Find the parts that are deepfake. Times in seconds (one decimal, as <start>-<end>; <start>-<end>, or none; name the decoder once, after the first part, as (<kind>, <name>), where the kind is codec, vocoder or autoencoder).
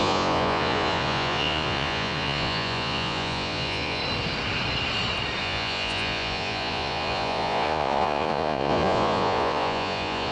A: 0.0-4.0 (vocoder, Vocos); 5.4-10.3